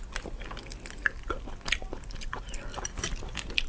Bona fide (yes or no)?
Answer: yes